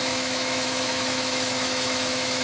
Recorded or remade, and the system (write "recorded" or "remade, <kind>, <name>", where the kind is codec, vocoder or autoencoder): remade, autoencoder, DAC-VAE